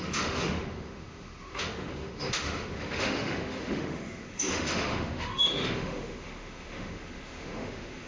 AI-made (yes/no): yes